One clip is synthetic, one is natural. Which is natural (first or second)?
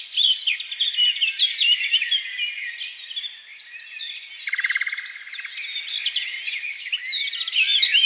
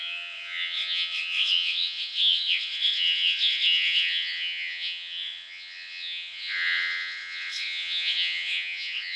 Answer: first